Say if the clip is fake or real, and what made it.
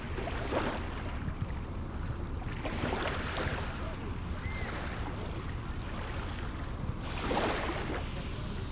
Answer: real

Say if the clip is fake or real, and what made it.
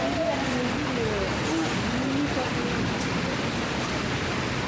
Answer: real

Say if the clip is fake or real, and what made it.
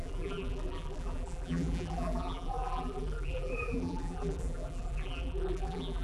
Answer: fake, vocoder, BigVGAN v2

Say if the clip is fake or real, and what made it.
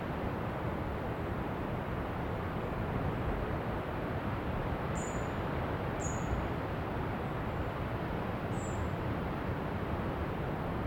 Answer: fake, vocoder, BigVGAN v2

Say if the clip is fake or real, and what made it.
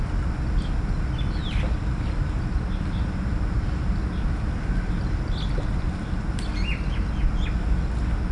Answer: real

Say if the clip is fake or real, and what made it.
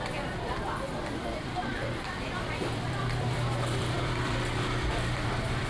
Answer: fake, vocoder, BigVGAN v2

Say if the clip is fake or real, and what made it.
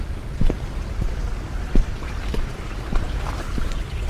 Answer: real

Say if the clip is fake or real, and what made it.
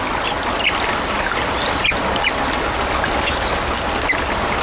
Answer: real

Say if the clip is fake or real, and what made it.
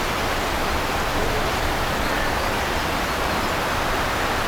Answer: real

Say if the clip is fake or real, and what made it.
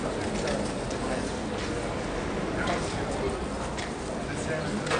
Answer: real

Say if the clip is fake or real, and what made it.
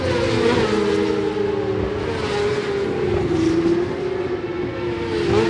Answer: real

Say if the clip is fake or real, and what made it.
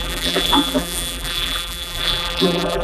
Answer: fake, vocoder, BigVGAN v2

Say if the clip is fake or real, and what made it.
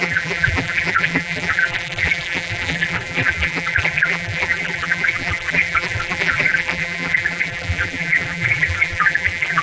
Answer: fake, vocoder, BigVGAN v2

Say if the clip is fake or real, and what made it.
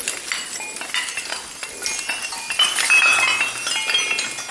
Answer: real